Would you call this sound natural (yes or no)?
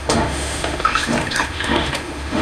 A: no